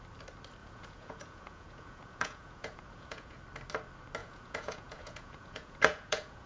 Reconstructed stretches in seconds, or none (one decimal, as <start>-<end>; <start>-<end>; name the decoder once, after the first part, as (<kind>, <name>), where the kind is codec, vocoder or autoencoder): 0.6-3.4 (vocoder, Vocos); 4.2-6.5